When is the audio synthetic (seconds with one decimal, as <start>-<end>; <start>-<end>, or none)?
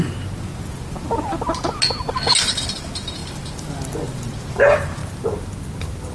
0.0-0.5; 2.4-6.1